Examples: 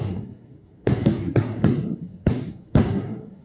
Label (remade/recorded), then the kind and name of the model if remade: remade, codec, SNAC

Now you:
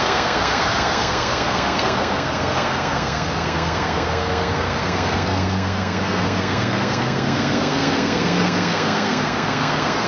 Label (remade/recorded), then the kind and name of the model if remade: remade, codec, SNAC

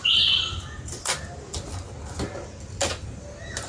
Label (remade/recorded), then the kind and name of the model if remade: recorded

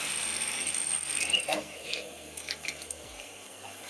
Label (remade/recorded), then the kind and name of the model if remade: remade, codec, SNAC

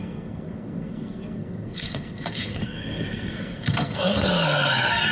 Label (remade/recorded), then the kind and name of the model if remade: remade, codec, SNAC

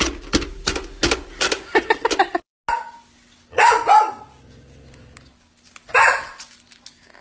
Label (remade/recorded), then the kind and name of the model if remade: recorded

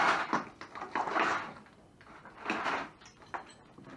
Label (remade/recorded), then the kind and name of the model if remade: recorded